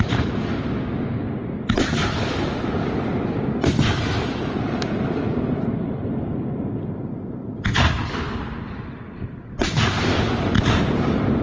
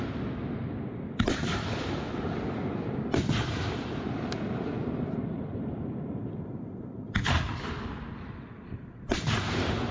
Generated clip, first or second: second